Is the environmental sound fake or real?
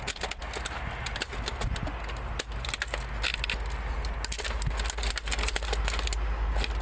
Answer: real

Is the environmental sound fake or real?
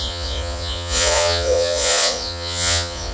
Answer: fake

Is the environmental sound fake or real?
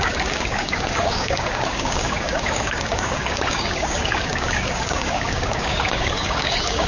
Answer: fake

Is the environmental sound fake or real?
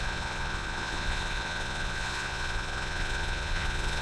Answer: fake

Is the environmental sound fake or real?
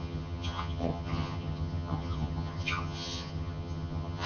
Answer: fake